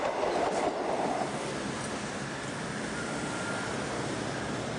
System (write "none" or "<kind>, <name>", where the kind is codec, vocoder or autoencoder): none